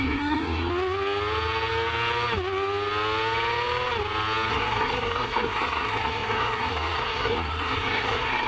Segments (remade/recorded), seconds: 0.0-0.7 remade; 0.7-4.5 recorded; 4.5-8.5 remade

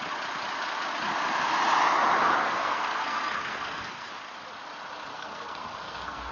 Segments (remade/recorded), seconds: 0.0-2.4 recorded; 2.4-4.1 remade; 4.1-5.1 recorded; 5.1-6.3 remade

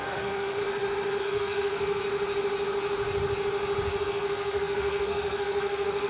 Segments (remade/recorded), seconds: 0.0-0.6 remade; 0.6-1.2 recorded; 1.2-2.0 remade; 2.0-4.0 recorded; 4.0-6.1 remade

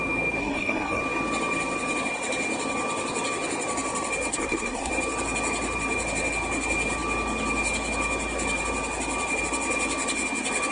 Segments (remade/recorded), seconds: 0.0-0.4 recorded; 0.4-1.0 remade; 1.0-4.3 recorded; 4.3-4.9 remade; 4.9-10.7 recorded

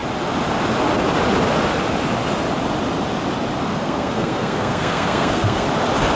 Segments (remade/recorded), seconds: 0.0-3.7 recorded; 3.7-5.7 remade; 5.7-6.2 recorded

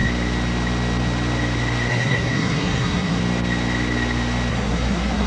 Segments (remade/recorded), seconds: 0.0-1.9 recorded; 1.9-3.2 remade; 3.2-4.5 recorded; 4.5-5.3 remade

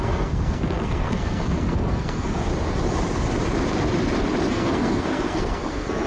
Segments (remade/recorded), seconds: 0.0-2.5 remade; 2.5-4.5 recorded; 4.5-6.1 remade

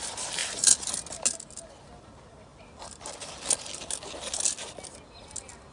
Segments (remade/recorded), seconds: 0.0-5.7 recorded